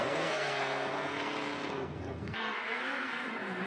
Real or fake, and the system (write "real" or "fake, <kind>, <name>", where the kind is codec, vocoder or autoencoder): fake, codec, SNAC